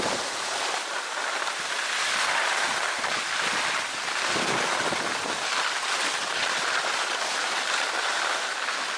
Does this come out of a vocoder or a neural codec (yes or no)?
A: no